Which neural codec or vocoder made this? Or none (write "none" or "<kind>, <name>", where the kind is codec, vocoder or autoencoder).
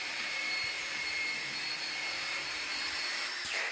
vocoder, BigVGAN v2